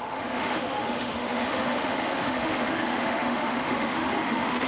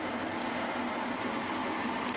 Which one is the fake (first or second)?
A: first